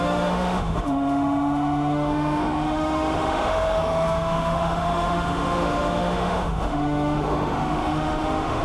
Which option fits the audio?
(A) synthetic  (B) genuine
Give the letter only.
A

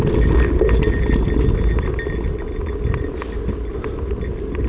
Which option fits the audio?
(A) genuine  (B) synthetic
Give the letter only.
A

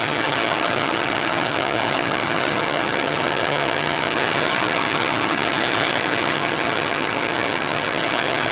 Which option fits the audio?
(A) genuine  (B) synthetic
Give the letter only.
B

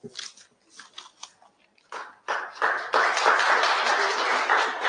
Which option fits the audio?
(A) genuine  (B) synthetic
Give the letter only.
A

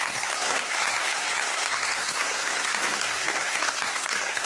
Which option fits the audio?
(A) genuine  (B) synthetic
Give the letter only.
B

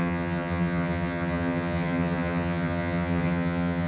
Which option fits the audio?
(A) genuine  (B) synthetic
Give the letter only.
B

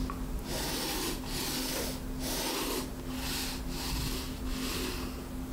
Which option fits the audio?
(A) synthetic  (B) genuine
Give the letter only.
B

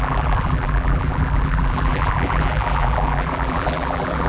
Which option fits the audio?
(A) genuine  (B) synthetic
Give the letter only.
B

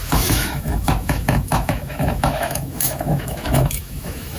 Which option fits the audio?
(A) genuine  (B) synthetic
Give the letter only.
B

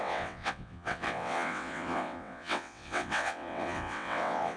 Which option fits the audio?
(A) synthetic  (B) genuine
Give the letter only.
A